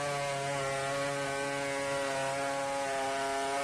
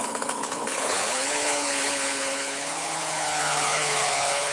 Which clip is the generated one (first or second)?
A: second